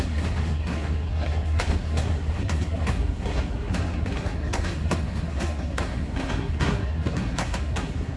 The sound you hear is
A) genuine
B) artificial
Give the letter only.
B